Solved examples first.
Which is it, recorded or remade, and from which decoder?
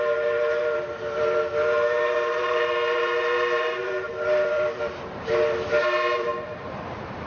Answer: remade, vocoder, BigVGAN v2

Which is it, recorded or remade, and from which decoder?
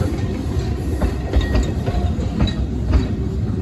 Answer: recorded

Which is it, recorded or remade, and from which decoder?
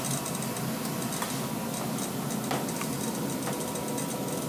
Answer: recorded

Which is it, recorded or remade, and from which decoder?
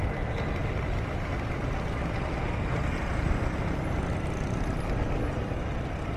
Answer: recorded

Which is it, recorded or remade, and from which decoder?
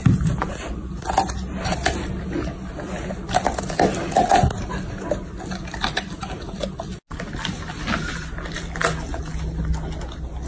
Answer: recorded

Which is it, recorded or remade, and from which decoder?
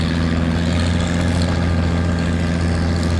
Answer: recorded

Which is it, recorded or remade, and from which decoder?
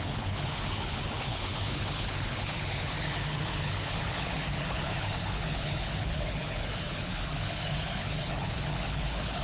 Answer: remade, codec, HILCodec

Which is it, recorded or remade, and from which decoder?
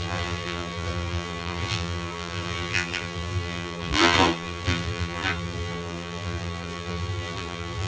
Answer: remade, vocoder, BigVGAN v2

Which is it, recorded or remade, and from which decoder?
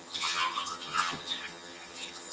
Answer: remade, vocoder, HiFi-GAN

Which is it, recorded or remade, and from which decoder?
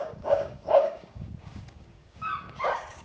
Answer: remade, codec, DAC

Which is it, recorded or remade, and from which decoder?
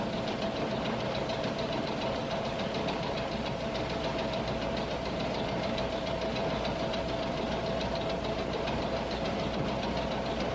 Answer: recorded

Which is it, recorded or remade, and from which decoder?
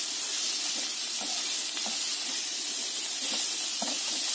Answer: recorded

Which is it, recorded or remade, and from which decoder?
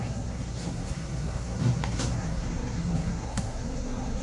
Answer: remade, codec, SNAC